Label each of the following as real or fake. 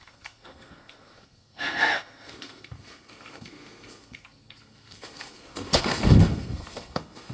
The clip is fake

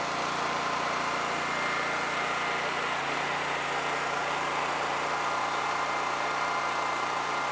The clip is fake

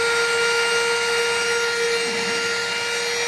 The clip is real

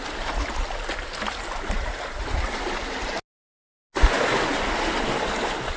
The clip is real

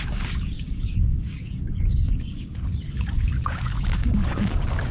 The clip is fake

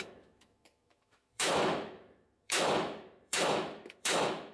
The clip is fake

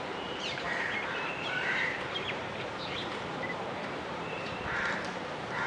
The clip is fake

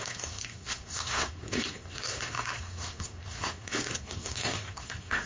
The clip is fake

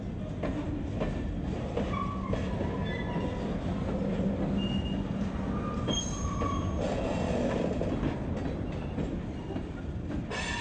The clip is real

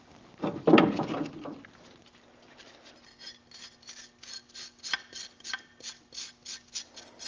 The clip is real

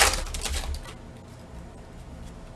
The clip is real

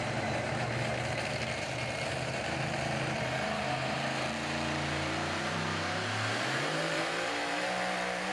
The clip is fake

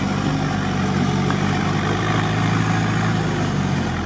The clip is real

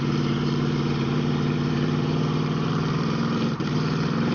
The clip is fake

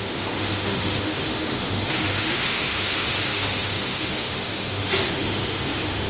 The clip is fake